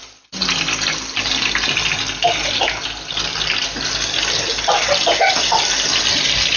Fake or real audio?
real